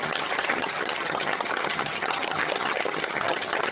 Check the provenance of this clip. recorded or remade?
remade